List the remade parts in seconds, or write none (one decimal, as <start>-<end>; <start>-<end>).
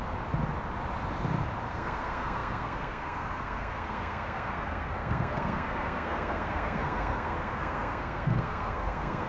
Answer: 1.7-9.3